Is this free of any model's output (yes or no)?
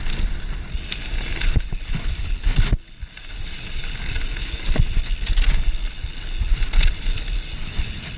yes